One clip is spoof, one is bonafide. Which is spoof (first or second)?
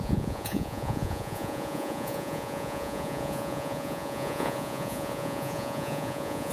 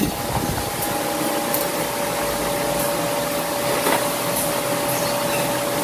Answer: first